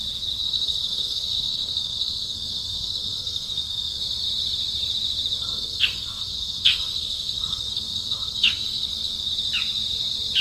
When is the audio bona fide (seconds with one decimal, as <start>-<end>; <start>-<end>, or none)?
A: 0.0-0.4; 4.0-5.4; 9.3-10.4